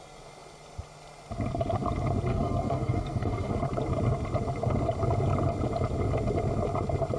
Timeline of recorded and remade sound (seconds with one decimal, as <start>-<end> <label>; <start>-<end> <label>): 0.0-2.3 recorded; 2.3-3.5 remade; 3.5-7.2 recorded